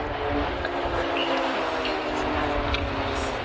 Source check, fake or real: real